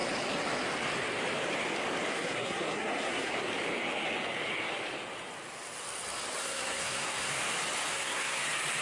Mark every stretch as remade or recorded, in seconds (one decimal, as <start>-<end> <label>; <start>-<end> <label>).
0.0-2.1 recorded; 2.1-3.3 remade; 3.3-6.4 recorded; 6.4-7.3 remade; 7.3-7.9 recorded; 7.9-8.4 remade; 8.4-8.8 recorded